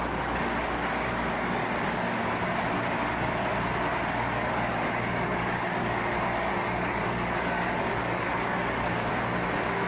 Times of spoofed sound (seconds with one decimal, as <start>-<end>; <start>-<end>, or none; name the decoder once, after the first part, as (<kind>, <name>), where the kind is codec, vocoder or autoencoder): 0.0-2.2 (codec, DAC); 3.9-9.1